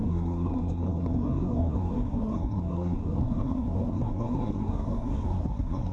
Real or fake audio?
fake